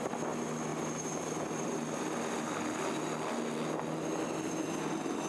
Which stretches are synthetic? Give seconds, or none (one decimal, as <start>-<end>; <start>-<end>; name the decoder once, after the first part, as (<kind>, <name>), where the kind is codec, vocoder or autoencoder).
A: none